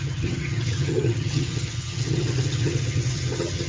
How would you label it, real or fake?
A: fake